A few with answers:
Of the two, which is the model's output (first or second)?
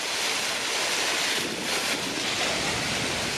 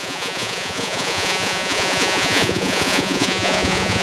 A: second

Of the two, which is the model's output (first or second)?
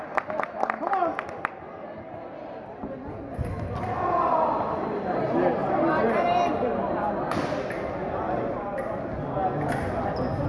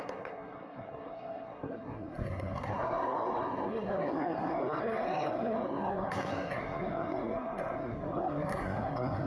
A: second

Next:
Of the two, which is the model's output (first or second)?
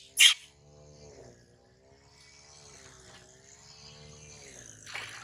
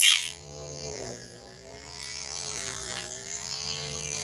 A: second